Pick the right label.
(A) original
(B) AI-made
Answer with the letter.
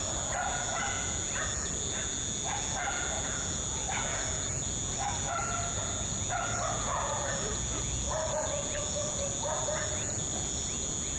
A